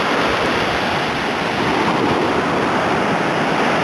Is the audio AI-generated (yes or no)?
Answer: no